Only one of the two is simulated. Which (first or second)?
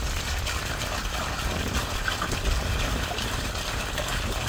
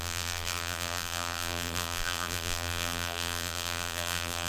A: second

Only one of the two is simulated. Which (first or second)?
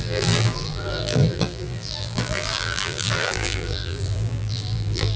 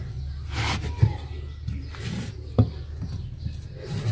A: first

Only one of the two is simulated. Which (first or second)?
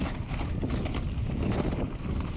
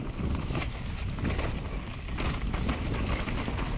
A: second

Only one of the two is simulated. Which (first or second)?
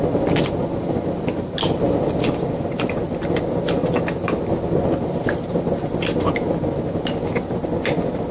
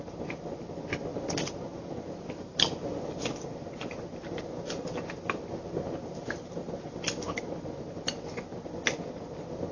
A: second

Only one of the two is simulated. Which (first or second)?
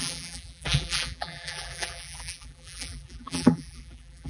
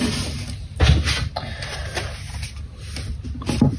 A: first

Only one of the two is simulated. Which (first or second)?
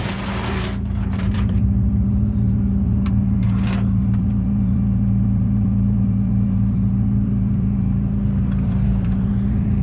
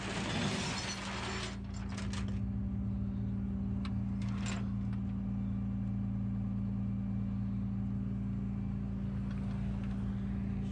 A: first